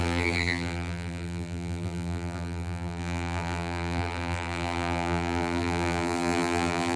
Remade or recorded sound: remade